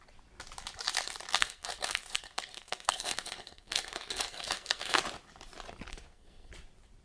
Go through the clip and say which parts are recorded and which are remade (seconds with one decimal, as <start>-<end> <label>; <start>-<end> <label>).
0.0-1.3 recorded; 1.3-5.0 remade; 5.0-5.9 recorded; 5.9-6.5 remade; 6.5-7.0 recorded

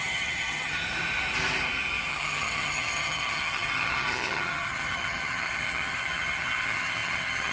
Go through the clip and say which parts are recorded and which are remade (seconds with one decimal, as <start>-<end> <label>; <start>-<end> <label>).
0.0-0.8 remade; 0.8-2.1 recorded; 2.1-7.5 remade